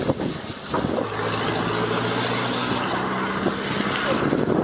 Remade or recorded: recorded